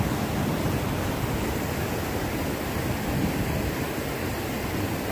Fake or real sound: real